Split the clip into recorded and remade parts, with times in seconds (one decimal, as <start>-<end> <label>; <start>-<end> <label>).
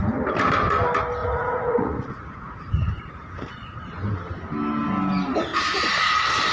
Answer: 0.0-1.2 recorded; 1.2-3.1 remade; 3.1-6.5 recorded